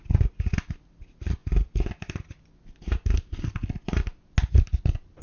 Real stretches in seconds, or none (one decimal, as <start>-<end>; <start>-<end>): 0.0-5.2